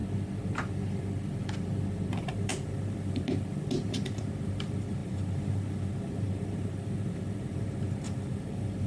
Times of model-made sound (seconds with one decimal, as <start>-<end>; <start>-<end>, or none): 2.1-8.9